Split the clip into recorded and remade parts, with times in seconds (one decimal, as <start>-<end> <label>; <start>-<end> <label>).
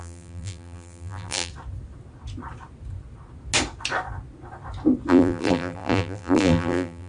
0.0-1.5 remade; 1.5-5.1 recorded; 5.1-7.1 remade